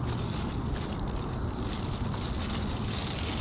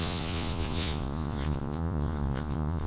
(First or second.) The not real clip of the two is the second